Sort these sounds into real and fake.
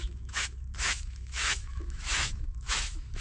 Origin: fake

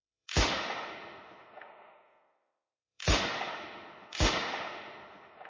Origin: fake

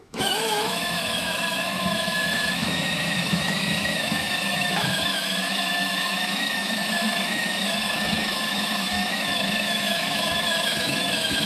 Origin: fake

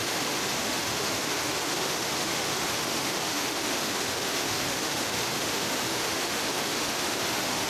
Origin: fake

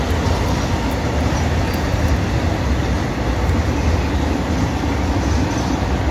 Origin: real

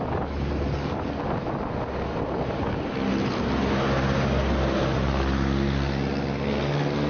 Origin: real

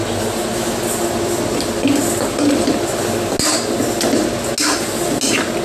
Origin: real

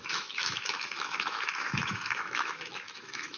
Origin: fake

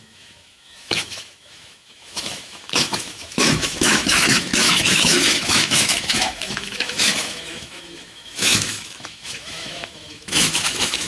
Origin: fake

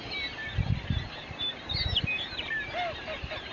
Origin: real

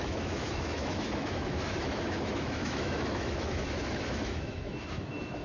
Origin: fake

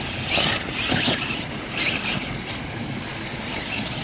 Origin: real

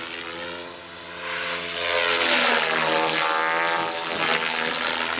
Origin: real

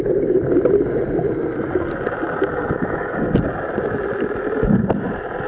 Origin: real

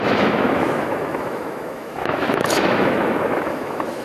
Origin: fake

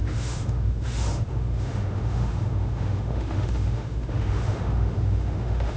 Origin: fake